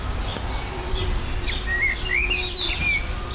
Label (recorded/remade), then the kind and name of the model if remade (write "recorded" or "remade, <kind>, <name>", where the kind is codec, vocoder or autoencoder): recorded